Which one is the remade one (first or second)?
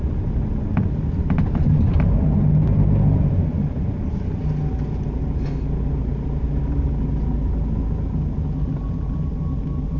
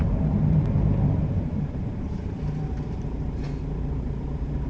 second